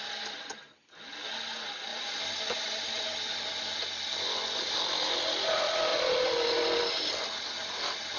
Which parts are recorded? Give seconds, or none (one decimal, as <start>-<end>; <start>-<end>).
0.0-1.9; 3.7-8.2